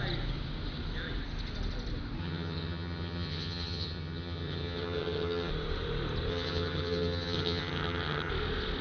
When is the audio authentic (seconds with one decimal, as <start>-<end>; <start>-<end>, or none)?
0.0-2.2; 5.5-6.3; 8.3-8.8

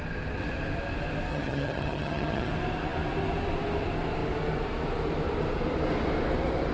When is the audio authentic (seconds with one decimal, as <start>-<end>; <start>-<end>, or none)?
0.0-1.3; 2.5-6.7